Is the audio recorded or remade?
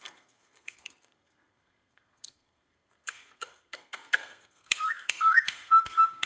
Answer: remade